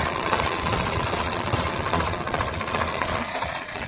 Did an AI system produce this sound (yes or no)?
yes